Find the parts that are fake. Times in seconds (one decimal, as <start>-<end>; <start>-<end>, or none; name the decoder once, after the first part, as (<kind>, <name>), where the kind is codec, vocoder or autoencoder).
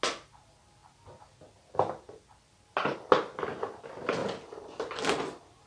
none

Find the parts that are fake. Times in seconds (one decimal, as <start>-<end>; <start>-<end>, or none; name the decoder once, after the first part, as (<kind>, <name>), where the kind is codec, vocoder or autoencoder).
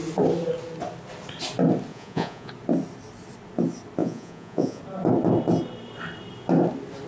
1.9-2.5 (vocoder, Vocos); 4.0-4.8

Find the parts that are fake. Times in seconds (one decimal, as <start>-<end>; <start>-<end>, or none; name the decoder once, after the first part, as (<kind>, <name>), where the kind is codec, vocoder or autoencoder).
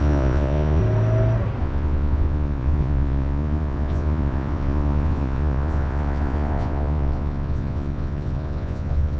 0.0-0.8 (vocoder, Vocos); 1.6-9.2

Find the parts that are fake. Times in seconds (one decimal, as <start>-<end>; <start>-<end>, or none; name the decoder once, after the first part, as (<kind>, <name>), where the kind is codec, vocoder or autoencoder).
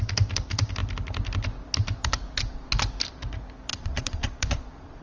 3.7-5.0 (vocoder, Vocos)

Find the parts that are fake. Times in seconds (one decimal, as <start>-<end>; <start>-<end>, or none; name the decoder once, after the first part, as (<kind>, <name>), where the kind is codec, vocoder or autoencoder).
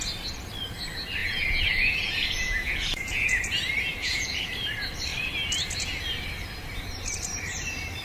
1.2-3.4 (vocoder, Vocos); 4.0-4.5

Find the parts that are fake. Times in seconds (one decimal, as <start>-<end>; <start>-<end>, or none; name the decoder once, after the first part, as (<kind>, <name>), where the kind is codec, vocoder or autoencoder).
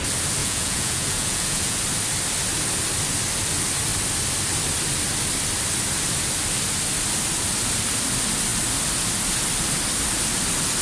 0.4-1.8 (vocoder, Vocos)